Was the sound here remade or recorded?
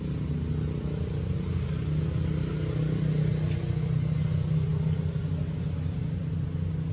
recorded